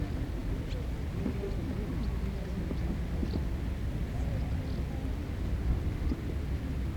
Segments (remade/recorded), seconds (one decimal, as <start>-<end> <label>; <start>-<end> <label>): 0.0-7.0 recorded